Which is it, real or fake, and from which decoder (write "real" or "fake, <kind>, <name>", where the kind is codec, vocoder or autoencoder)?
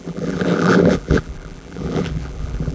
fake, vocoder, BigVGAN v2